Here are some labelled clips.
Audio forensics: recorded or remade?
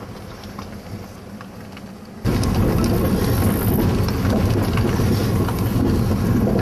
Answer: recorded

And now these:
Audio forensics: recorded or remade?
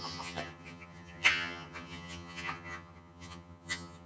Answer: remade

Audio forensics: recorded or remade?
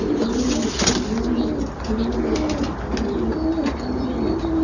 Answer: recorded